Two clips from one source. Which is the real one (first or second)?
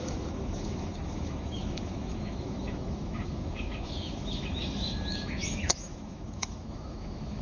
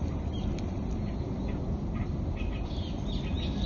second